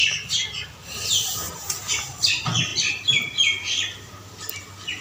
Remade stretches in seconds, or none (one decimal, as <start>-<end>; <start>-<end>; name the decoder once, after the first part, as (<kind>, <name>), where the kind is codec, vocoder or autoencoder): none